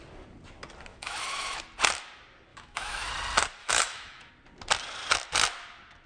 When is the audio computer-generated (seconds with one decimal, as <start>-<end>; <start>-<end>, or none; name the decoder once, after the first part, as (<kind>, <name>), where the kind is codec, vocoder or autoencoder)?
0.9-1.6 (autoencoder, DAC-VAE); 2.5-3.1; 3.6-4.3